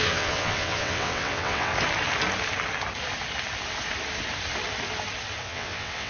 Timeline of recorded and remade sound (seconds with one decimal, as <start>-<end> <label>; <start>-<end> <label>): 0.0-1.7 remade; 1.7-5.4 recorded; 5.4-6.1 remade